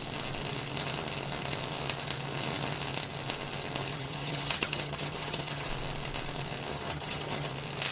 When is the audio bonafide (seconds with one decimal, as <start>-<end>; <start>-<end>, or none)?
0.0-3.9; 5.7-6.7; 7.5-7.9